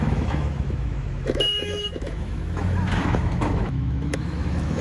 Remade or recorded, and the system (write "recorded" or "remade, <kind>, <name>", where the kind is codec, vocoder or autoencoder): remade, autoencoder, DAC-VAE